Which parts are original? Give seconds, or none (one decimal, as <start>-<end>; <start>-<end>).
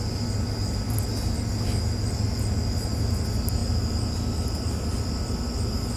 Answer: 0.0-3.6; 4.6-6.0